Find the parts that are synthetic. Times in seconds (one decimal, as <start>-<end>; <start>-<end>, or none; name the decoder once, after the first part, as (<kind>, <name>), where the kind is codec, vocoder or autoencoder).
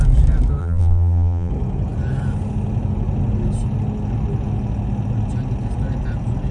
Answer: 0.6-1.5 (vocoder, BigVGAN v2)